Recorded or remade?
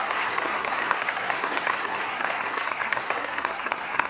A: remade